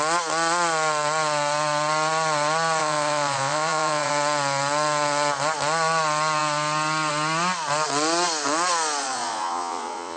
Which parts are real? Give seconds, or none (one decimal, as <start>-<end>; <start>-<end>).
0.0-2.8; 4.1-9.0